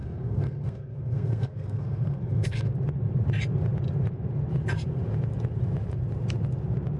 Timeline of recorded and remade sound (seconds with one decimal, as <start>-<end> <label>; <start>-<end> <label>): 0.0-2.7 remade; 2.7-7.0 recorded